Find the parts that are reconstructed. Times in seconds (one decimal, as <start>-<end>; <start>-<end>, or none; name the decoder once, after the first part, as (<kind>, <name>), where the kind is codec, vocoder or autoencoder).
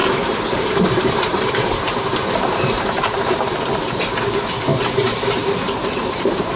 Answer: 0.0-4.0 (vocoder, BigVGAN v2); 4.7-6.6